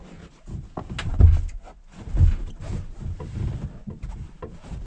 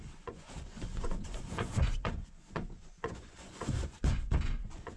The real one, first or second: first